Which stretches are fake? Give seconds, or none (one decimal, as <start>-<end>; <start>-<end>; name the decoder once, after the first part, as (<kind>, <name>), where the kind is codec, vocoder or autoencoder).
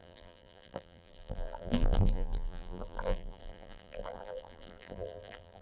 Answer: 0.0-5.6 (vocoder, BigVGAN v2)